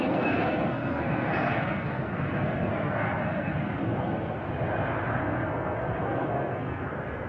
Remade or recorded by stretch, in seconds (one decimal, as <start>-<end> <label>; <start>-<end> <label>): 0.0-4.4 remade; 4.4-5.2 recorded; 5.2-7.3 remade